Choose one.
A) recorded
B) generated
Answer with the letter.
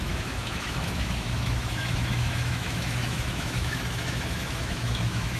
B